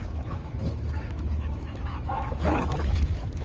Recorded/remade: remade